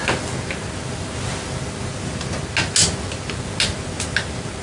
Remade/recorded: recorded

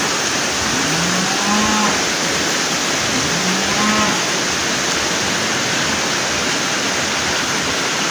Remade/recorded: recorded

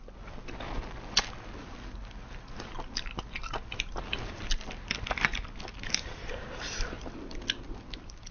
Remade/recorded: recorded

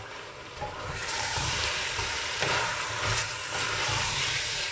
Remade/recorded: remade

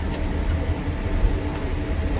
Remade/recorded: recorded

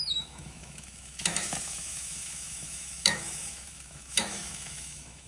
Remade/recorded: remade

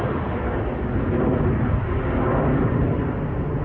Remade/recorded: recorded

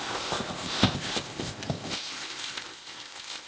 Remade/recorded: remade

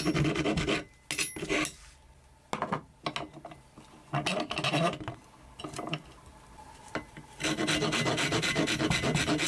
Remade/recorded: recorded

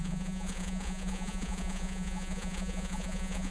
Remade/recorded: remade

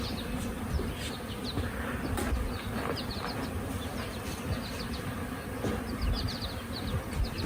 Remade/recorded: recorded